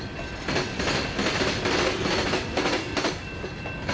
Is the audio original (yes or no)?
yes